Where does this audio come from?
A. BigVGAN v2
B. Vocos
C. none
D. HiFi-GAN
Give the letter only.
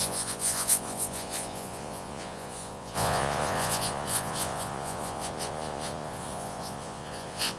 B